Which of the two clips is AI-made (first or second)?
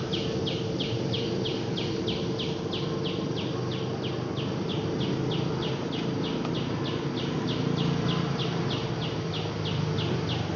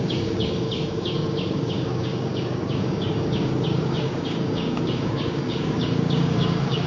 second